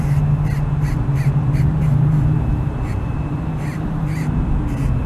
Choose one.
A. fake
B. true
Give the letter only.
A